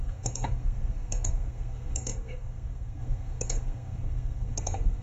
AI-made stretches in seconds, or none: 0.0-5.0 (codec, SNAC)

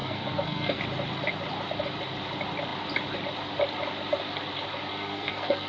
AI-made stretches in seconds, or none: 0.0-0.8 (codec, SNAC); 4.9-5.7

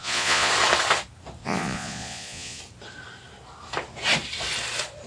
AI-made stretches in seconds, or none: 0.0-0.5 (vocoder, Vocos); 1.4-2.6

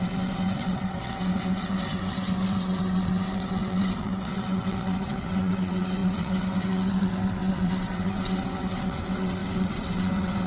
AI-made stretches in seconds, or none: 0.0-10.5 (vocoder, WaveNeXt)